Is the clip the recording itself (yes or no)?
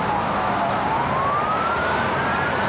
yes